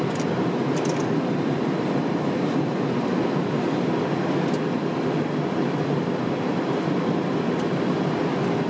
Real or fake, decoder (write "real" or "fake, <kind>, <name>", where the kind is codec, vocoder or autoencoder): fake, vocoder, BigVGAN v2